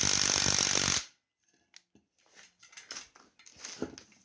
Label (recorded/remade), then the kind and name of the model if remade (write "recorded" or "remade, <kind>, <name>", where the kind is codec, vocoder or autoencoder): recorded